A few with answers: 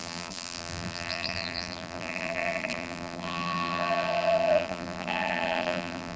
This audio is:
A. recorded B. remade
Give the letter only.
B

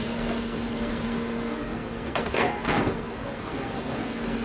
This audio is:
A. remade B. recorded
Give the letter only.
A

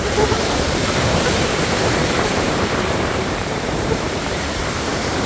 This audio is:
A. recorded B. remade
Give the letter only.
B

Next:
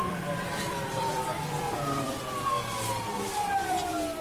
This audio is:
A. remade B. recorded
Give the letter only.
A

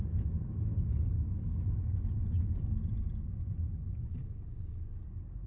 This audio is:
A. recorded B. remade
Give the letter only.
A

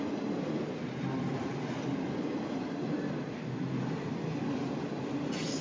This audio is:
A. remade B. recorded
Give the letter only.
B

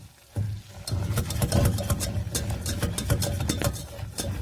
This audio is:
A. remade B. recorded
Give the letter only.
B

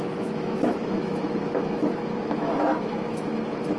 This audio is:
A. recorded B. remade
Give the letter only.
B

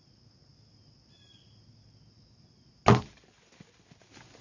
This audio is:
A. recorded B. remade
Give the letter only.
A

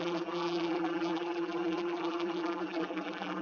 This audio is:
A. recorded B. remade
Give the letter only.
B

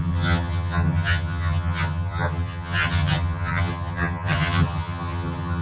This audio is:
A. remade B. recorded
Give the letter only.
A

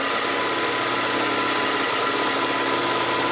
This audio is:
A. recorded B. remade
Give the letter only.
A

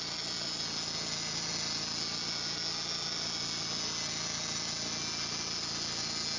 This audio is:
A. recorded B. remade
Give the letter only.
A